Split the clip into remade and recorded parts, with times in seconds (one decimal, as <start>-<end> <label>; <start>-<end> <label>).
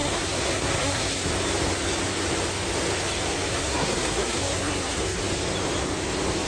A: 0.0-1.3 remade; 1.3-3.5 recorded; 3.5-5.2 remade; 5.2-6.5 recorded